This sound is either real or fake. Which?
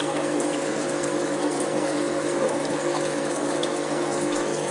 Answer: fake